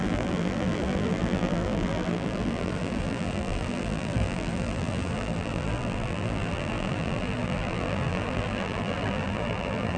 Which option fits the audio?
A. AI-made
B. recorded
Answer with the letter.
A